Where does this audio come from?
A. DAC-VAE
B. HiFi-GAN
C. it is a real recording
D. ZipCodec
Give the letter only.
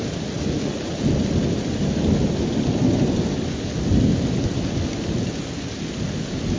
C